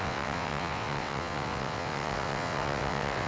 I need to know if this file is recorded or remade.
remade